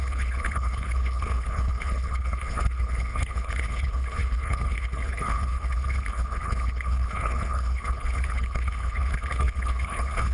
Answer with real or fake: fake